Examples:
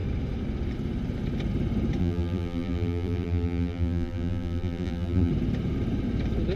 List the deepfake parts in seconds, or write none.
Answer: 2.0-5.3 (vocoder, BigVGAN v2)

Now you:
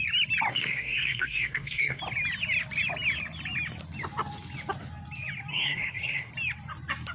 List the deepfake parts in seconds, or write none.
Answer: 0.5-2.0 (codec, SNAC); 5.5-6.3

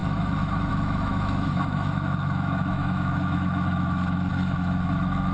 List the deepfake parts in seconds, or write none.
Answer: 0.0-5.3 (autoencoder, DAC-VAE)

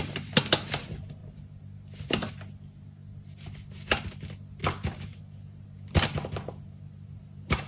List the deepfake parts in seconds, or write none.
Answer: 1.2-2.3 (vocoder, BigVGAN v2); 4.6-5.2

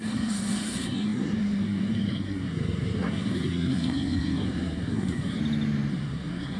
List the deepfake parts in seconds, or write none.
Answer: 0.0-5.4 (codec, SNAC); 5.9-6.6